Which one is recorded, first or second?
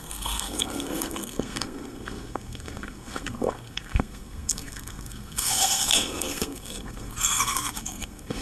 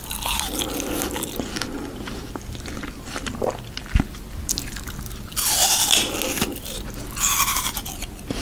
second